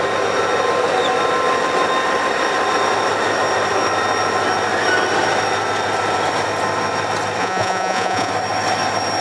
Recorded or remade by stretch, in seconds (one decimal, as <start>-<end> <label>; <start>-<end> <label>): 0.0-7.4 recorded; 7.4-8.3 remade; 8.3-9.2 recorded